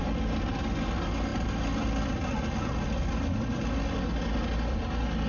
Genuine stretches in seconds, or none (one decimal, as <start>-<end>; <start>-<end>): 0.0-5.3